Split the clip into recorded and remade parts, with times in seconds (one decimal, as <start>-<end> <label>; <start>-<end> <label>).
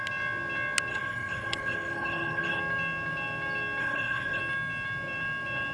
0.0-0.9 recorded; 0.9-2.6 remade; 2.6-3.8 recorded; 3.8-4.4 remade; 4.4-5.7 recorded